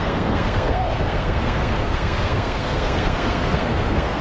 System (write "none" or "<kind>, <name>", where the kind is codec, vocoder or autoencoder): codec, SNAC